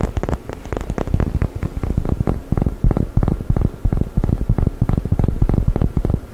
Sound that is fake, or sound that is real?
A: fake